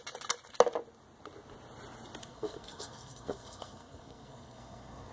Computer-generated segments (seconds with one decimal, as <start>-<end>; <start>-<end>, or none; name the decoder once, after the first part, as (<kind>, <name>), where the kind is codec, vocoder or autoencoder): 2.2-5.1 (codec, SNAC)